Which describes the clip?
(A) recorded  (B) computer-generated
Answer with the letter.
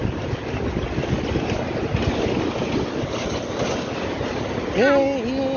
A